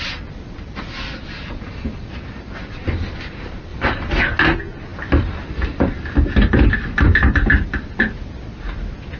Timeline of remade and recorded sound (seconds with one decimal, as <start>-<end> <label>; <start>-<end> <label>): 0.0-3.7 recorded; 3.7-4.2 remade; 4.2-9.2 recorded